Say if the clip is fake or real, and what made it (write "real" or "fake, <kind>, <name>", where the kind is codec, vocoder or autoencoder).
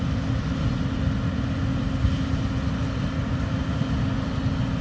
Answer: real